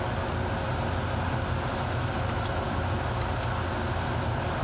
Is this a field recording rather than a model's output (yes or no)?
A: yes